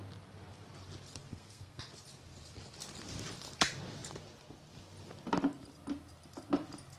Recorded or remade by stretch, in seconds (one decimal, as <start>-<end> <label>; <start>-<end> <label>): 0.0-1.3 recorded; 1.3-1.8 remade; 1.8-7.0 recorded